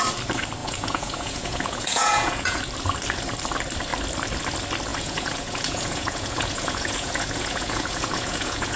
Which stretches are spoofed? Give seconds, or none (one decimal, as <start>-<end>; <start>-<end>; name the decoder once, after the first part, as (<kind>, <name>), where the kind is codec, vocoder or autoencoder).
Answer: 0.6-2.6 (vocoder, Vocos); 4.9-8.8

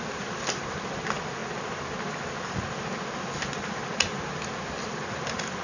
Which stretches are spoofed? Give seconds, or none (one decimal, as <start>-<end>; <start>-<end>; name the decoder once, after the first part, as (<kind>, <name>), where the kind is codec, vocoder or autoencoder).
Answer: none

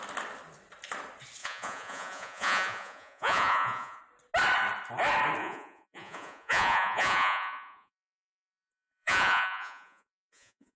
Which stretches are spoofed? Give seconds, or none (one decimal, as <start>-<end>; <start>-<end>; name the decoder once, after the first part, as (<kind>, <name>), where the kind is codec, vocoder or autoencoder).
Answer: 1.4-4.0 (vocoder, Vocos); 5.4-10.8